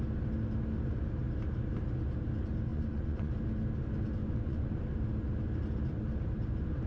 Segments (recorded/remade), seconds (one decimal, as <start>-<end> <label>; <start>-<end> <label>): 0.0-2.7 recorded; 2.7-3.3 remade; 3.3-4.2 recorded; 4.2-4.8 remade; 4.8-6.9 recorded